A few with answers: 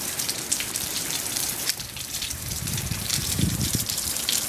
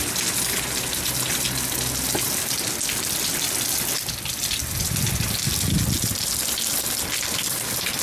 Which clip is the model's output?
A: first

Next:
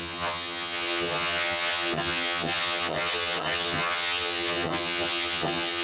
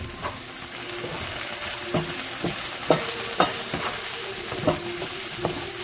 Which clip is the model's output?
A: first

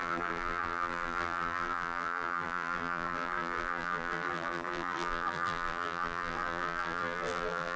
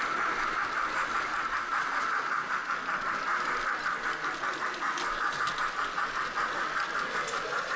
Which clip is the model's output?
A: first